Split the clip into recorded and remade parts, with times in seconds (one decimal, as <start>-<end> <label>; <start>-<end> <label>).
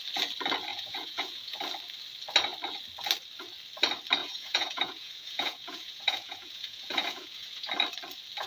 0.0-0.7 recorded; 0.7-1.6 remade; 1.6-4.2 recorded; 4.2-7.7 remade; 7.7-8.5 recorded